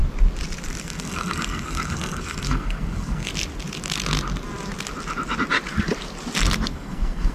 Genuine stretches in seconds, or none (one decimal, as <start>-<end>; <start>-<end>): 0.0-0.8; 3.3-6.7